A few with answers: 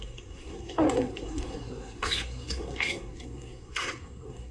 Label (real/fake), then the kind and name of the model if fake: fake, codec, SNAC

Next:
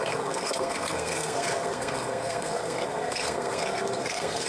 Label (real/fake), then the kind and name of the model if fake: fake, codec, SNAC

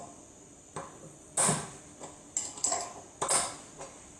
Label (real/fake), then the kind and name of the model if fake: real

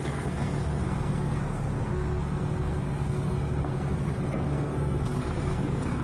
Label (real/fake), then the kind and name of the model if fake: fake, codec, SNAC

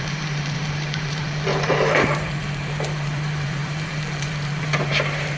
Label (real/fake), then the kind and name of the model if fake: fake, vocoder, BigVGAN v2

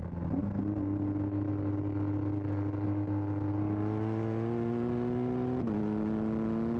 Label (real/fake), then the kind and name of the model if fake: real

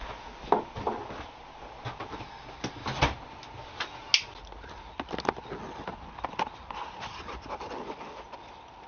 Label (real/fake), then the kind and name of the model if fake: real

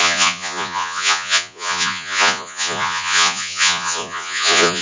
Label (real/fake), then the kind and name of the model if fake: fake, vocoder, Vocos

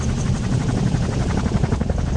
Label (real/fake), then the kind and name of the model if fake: real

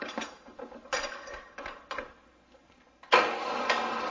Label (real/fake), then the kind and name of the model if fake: real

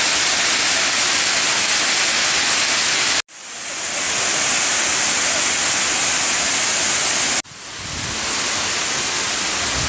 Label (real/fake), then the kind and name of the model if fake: real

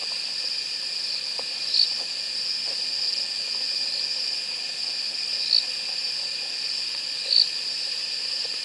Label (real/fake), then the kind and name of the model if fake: real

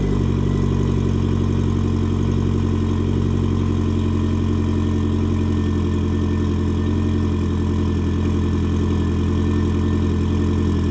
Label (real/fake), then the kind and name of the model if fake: real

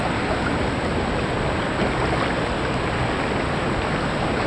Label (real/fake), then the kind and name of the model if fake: real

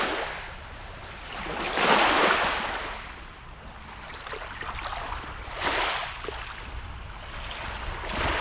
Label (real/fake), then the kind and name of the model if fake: real